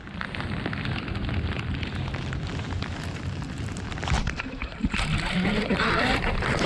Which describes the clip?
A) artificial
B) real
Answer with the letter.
A